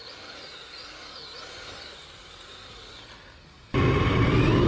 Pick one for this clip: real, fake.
real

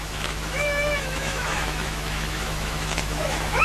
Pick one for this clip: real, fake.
fake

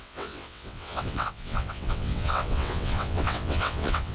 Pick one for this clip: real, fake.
fake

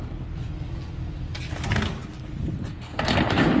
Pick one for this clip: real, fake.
real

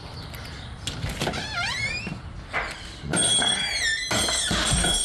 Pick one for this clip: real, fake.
real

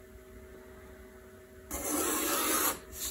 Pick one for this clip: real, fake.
real